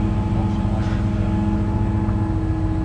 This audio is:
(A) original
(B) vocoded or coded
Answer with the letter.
A